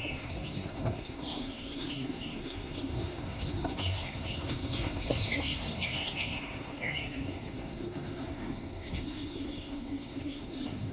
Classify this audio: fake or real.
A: fake